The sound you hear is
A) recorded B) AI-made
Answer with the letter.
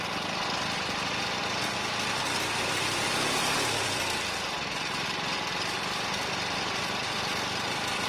A